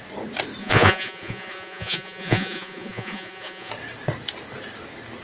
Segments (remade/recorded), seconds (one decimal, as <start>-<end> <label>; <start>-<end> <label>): 0.0-0.6 recorded; 0.6-3.7 remade; 3.7-5.2 recorded